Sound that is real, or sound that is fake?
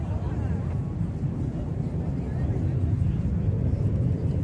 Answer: real